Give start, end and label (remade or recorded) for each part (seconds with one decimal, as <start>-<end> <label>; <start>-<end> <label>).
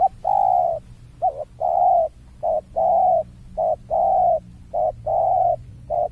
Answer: 0.0-5.1 recorded; 5.1-6.1 remade